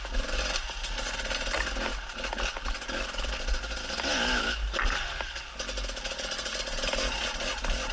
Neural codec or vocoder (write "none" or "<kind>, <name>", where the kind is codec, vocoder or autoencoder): none